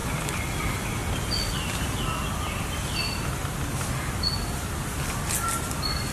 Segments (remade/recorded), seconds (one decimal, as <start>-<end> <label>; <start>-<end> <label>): 0.0-6.1 recorded

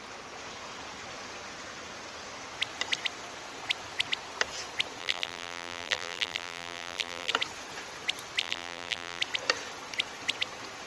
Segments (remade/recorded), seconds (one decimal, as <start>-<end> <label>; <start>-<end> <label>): 0.0-5.0 recorded; 5.0-7.3 remade; 7.3-8.4 recorded; 8.4-9.2 remade; 9.2-10.9 recorded

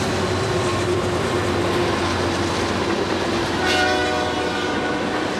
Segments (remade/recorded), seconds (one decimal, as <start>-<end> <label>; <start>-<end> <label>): 0.0-0.7 recorded; 0.7-1.3 remade; 1.3-4.0 recorded; 4.0-4.9 remade; 4.9-5.4 recorded

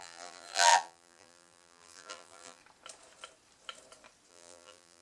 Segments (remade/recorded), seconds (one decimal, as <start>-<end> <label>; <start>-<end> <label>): 0.0-2.6 remade; 2.6-4.3 recorded; 4.3-5.0 remade

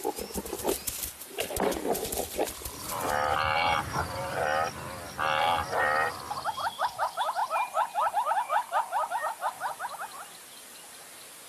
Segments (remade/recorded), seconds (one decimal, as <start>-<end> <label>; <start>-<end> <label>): 0.0-0.8 recorded; 0.8-4.4 remade; 4.4-7.4 recorded; 7.4-9.4 remade; 9.4-11.5 recorded